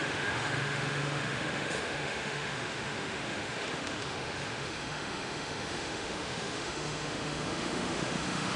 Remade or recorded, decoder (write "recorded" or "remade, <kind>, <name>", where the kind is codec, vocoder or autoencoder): remade, autoencoder, DAC-VAE